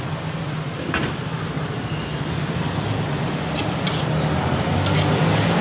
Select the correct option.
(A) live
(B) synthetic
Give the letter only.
A